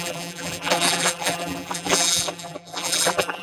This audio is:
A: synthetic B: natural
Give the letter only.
A